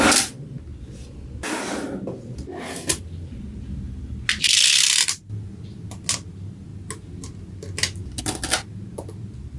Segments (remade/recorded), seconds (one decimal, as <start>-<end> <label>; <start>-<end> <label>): 0.0-9.6 recorded

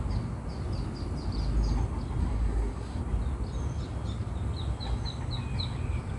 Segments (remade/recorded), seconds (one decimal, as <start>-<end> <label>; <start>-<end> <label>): 0.0-2.2 recorded; 2.2-3.0 remade; 3.0-6.2 recorded

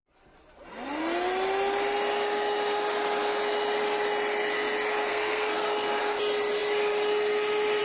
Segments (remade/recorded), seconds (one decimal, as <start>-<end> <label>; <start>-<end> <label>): 0.0-5.1 recorded; 5.1-6.0 remade; 6.0-7.8 recorded

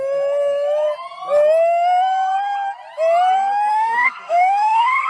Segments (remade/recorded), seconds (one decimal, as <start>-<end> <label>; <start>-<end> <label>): 0.0-3.7 recorded; 3.7-5.1 remade